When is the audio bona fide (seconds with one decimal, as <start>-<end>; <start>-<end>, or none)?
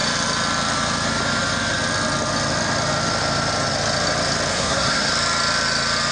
0.0-4.5; 5.1-6.1